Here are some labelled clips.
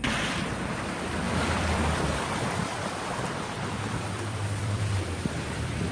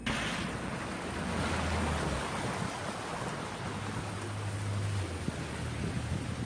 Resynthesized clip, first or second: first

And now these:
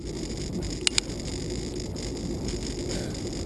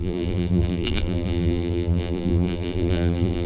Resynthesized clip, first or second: second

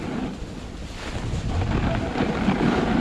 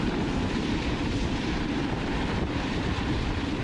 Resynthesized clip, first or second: second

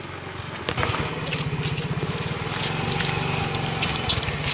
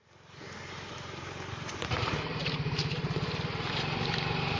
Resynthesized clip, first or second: second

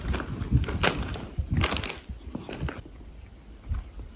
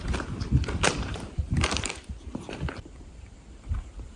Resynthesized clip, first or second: second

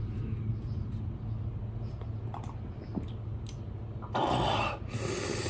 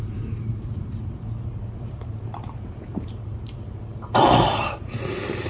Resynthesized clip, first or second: second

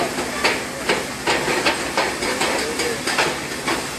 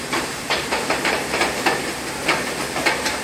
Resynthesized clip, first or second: second